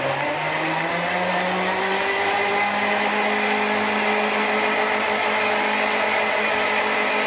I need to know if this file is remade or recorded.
recorded